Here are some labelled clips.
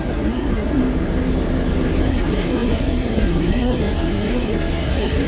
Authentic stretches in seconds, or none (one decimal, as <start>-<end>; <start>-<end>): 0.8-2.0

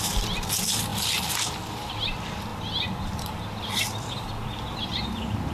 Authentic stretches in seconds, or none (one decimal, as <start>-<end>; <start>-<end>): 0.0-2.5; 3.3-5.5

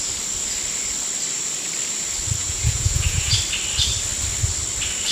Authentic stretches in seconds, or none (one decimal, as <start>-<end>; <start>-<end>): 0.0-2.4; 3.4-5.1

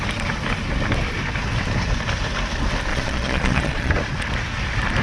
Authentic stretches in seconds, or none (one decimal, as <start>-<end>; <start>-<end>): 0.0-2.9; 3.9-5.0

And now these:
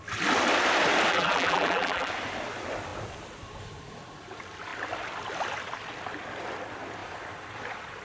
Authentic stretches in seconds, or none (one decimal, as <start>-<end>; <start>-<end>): 0.0-1.1; 2.1-8.0